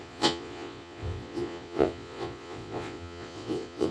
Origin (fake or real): fake